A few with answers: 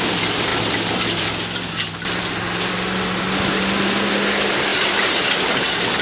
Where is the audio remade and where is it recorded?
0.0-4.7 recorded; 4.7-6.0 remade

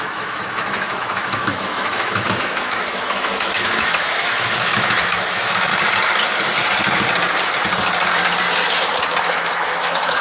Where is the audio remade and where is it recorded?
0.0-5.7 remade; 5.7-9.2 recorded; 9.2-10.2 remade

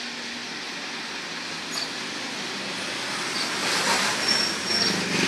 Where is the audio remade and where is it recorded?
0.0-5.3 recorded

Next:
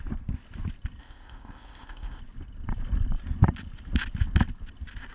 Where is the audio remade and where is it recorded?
0.0-1.0 recorded; 1.0-2.2 remade; 2.2-5.1 recorded

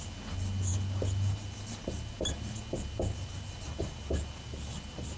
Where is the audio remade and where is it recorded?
0.0-5.2 recorded

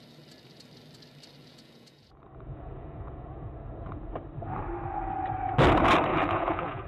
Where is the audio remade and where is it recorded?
0.0-1.4 recorded; 1.4-4.1 remade; 4.1-6.1 recorded; 6.1-6.9 remade

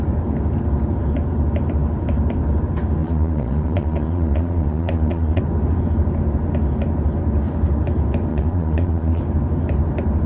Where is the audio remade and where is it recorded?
0.0-3.0 recorded; 3.0-5.4 remade; 5.4-8.3 recorded; 8.3-9.2 remade; 9.2-10.3 recorded

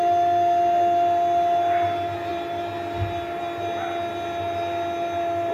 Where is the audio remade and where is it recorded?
0.0-5.5 recorded